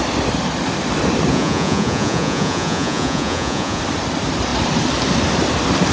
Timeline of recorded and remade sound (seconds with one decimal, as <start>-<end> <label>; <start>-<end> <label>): 0.0-1.3 recorded; 1.3-3.8 remade; 3.8-5.9 recorded